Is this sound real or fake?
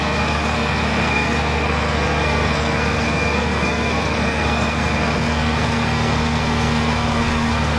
fake